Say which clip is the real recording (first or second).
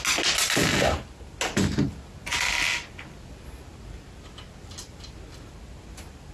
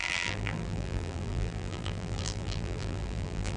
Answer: first